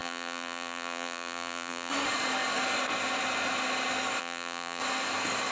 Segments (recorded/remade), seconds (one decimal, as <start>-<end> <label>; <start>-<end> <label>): 0.0-1.9 remade; 1.9-4.2 recorded; 4.2-4.8 remade; 4.8-5.5 recorded